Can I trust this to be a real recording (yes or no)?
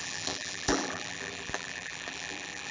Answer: no